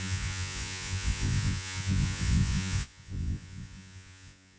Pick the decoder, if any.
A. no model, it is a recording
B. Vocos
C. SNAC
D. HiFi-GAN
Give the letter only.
B